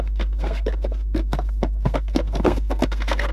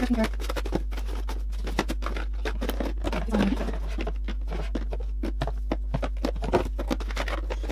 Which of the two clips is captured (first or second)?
second